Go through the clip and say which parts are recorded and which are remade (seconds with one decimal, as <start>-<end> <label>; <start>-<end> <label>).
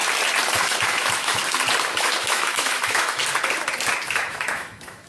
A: 0.0-0.6 recorded; 0.6-1.4 remade; 1.4-1.9 recorded; 1.9-3.2 remade; 3.2-4.1 recorded; 4.1-5.1 remade